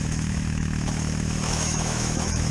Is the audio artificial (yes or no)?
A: yes